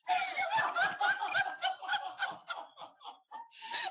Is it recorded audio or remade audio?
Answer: recorded